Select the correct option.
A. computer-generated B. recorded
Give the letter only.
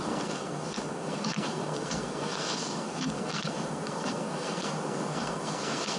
A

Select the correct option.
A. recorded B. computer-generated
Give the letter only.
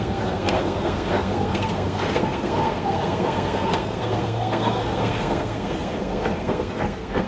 B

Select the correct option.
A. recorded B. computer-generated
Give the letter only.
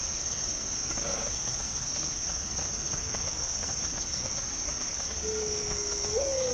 B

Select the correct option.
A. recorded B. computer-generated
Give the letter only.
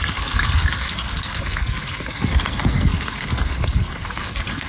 B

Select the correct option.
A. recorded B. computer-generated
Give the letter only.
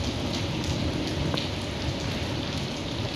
A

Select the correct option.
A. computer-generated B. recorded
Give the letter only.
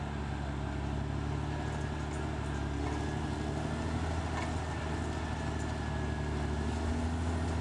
B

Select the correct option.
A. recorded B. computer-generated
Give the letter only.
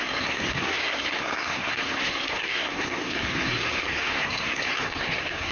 B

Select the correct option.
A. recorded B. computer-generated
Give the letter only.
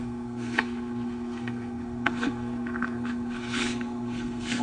B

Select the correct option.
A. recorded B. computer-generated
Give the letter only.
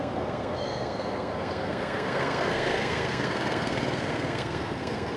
B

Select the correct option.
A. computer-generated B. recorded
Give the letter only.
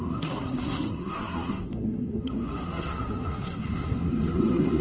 A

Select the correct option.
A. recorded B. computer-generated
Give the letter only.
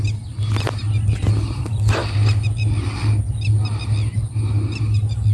A